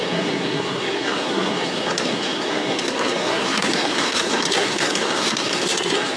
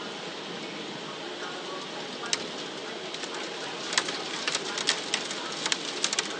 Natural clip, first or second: second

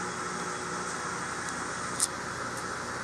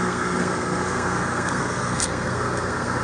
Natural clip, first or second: first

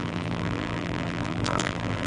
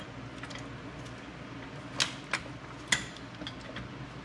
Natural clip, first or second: second